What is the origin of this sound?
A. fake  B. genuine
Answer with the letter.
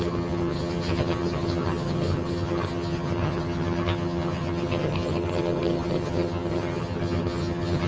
A